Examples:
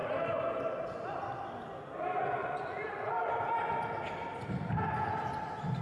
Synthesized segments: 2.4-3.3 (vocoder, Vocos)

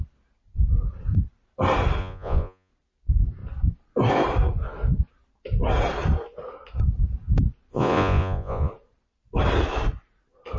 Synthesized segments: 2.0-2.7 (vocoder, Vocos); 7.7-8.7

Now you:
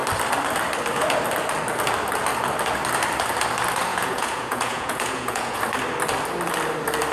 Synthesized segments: 3.9-5.6 (vocoder, Vocos)

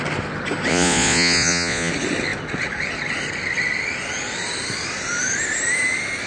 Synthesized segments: 0.7-1.9 (vocoder, Vocos)

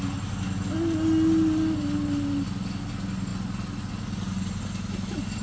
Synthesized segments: none

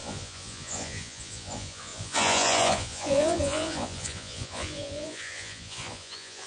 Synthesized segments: 0.0-6.5 (vocoder, Vocos)